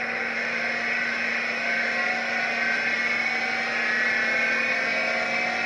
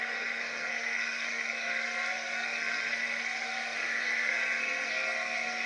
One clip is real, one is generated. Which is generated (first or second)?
second